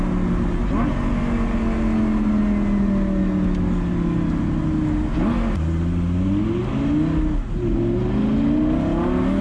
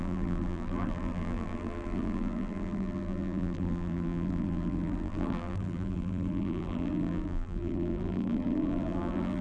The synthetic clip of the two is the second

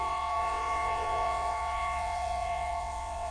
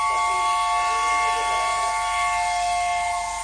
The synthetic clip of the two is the first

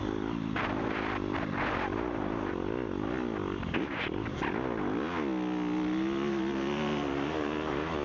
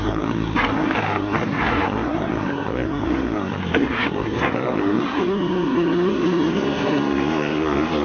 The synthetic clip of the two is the second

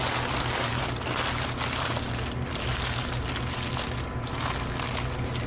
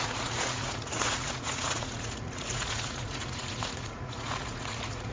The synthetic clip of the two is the second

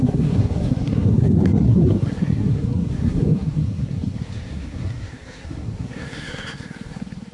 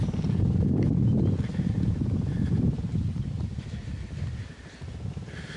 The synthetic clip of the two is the first